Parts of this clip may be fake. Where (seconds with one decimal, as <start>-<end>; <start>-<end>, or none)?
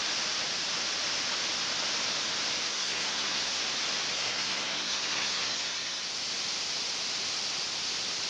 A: 2.7-3.6; 4.1-6.0